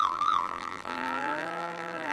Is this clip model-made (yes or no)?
yes